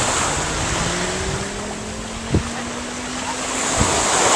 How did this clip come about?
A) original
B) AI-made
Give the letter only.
A